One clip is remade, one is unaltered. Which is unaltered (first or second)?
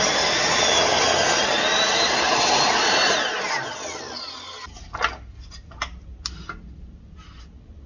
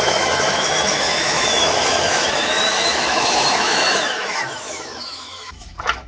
first